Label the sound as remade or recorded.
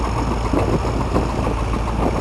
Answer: recorded